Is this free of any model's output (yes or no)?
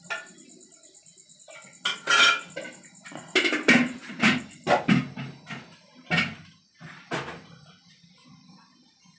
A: yes